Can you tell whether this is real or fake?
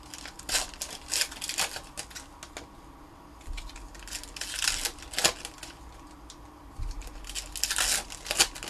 real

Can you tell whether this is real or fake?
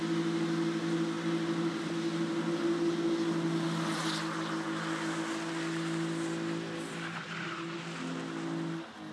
real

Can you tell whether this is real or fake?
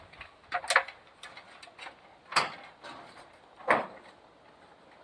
real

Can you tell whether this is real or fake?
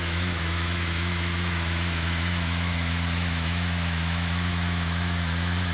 fake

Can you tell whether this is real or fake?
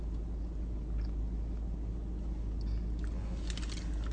real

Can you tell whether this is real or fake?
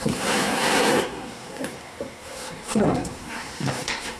fake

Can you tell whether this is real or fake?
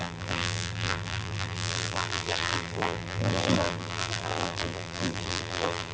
fake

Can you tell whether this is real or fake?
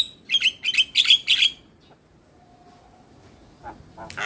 real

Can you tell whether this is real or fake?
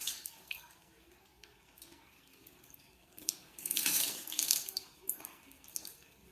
fake